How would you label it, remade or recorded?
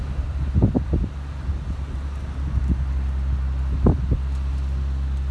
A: recorded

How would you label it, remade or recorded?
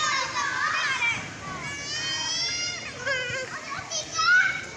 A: recorded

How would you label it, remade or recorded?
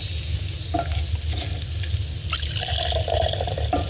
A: recorded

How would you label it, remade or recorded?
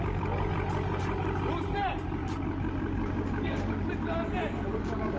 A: recorded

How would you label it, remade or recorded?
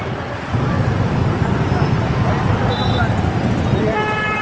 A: recorded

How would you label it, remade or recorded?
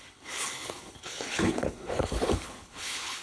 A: remade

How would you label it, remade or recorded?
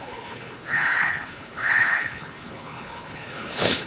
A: remade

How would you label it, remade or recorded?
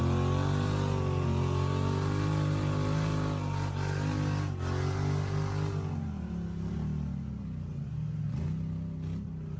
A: recorded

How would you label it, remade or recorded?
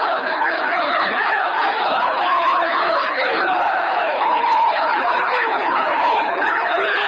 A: remade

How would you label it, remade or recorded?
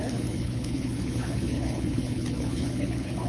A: remade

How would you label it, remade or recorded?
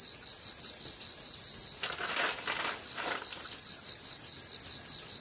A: recorded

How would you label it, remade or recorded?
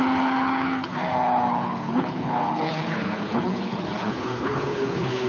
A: remade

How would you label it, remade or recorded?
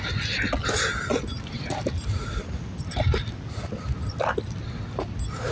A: recorded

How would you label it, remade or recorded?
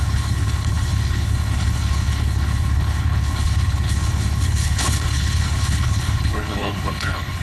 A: remade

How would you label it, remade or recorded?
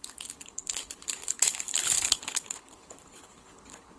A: remade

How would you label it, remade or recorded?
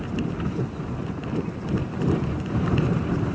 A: recorded